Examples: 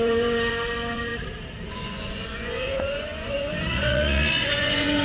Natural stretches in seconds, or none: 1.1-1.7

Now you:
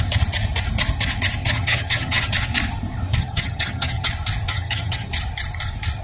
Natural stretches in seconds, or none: 0.0-1.4; 2.3-3.2; 4.1-4.5; 5.1-6.0